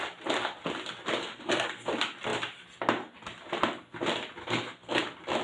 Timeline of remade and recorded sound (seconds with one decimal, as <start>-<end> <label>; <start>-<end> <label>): 0.0-1.2 recorded; 1.2-1.9 remade; 1.9-4.4 recorded; 4.4-5.0 remade; 5.0-5.4 recorded